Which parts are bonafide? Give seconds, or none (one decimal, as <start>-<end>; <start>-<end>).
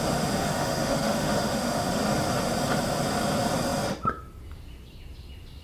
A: 0.0-0.4; 2.0-5.6